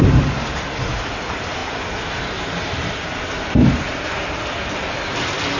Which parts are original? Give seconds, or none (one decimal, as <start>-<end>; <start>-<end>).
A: 0.0-5.6